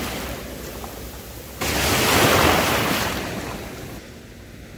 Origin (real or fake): real